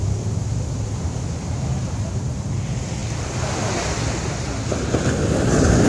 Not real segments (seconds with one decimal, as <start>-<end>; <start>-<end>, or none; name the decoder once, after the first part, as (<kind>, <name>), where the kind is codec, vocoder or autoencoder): none